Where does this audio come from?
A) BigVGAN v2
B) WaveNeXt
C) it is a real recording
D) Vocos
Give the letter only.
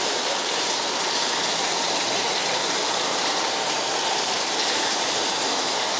A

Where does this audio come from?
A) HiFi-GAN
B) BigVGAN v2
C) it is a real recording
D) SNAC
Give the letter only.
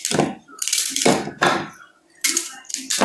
C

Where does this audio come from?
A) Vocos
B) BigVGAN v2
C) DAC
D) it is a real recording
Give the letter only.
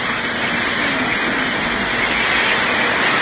D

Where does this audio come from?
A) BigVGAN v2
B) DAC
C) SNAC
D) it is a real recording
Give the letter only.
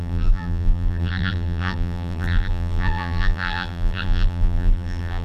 A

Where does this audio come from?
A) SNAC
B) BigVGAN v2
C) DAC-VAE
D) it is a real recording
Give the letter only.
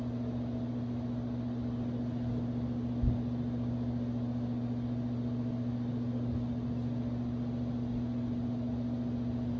D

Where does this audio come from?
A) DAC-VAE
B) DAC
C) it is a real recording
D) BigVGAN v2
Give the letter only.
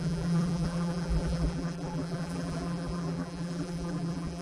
D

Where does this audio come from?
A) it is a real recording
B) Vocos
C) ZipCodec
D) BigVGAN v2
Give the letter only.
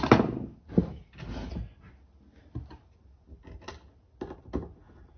A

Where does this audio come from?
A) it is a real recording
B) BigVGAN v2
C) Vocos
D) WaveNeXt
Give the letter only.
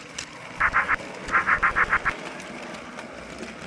A